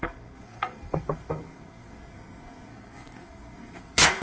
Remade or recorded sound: remade